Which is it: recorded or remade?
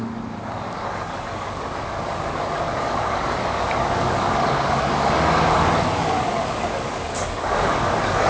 remade